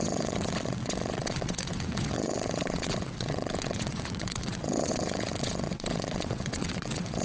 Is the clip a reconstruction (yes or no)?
yes